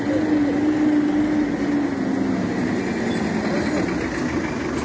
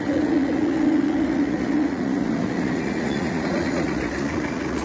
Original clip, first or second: first